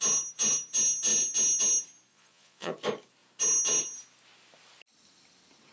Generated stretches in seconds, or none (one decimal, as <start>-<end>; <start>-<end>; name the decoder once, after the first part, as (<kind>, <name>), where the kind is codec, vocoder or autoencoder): 2.1-2.7 (vocoder, Vocos)